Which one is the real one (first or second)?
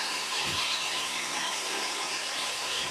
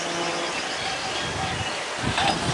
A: second